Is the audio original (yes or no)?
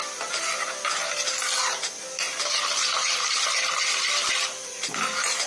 yes